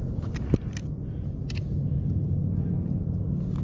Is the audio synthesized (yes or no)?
no